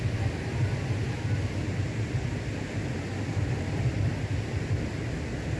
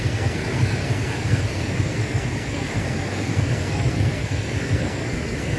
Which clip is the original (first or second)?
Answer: first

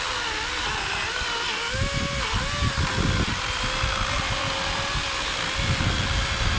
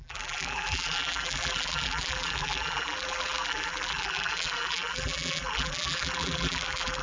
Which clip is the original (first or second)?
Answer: first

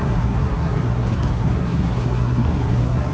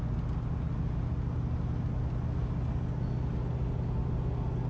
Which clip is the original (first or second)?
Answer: second